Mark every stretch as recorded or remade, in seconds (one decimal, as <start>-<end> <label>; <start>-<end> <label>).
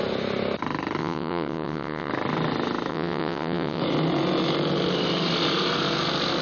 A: 0.0-1.0 recorded; 1.0-2.1 remade; 2.1-2.9 recorded; 2.9-3.8 remade; 3.8-6.4 recorded